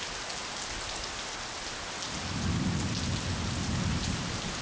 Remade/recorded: recorded